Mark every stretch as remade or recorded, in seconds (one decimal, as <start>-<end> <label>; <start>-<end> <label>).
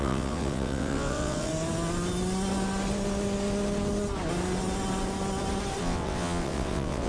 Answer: 0.0-1.5 remade; 1.5-5.8 recorded; 5.8-7.1 remade